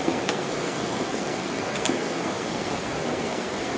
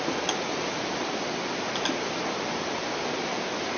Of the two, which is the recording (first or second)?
second